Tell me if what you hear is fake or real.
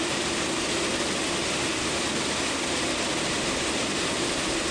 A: real